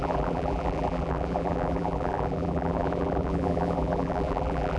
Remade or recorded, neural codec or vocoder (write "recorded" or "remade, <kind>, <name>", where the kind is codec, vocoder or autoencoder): remade, vocoder, BigVGAN v2